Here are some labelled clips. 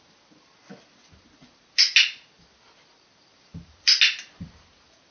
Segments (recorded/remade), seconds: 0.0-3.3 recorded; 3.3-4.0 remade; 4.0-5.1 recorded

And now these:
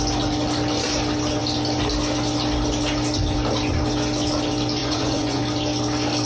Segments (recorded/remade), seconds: 0.0-4.8 recorded; 4.8-5.4 remade; 5.4-6.3 recorded

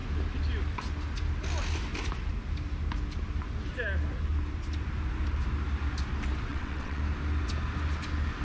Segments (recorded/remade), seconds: 0.0-6.5 recorded; 6.5-7.0 remade; 7.0-8.4 recorded